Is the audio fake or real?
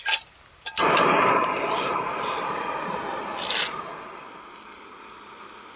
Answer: real